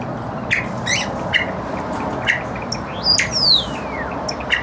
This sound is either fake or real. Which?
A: real